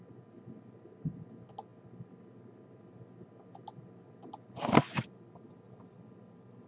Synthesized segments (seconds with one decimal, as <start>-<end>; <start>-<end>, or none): none